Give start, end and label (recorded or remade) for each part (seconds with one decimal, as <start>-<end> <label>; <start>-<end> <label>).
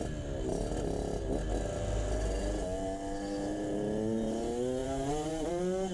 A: 0.0-4.8 recorded; 4.8-5.5 remade; 5.5-5.9 recorded